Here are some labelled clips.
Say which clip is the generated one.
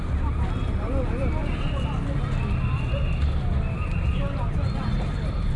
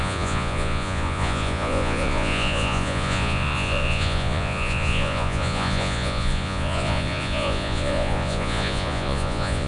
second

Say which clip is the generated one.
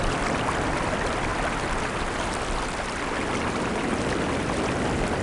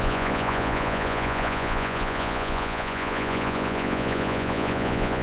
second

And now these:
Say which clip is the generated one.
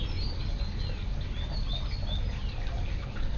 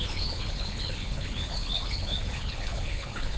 second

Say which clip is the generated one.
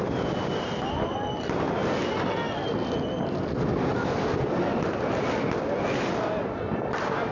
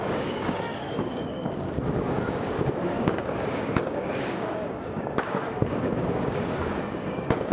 second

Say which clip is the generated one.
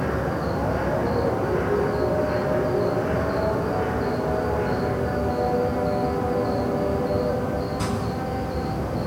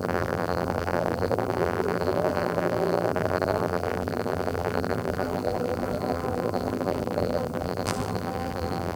second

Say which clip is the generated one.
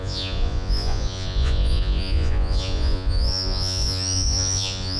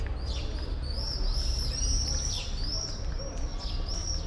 first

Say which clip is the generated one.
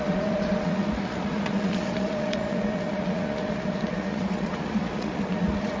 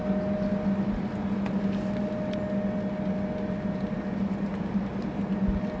first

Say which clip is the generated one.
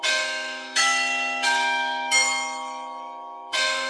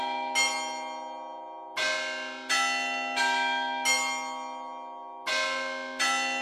first